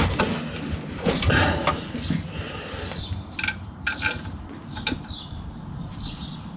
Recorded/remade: recorded